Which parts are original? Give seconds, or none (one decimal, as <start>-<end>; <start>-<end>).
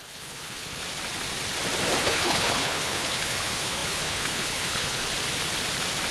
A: 0.8-2.0; 5.0-6.1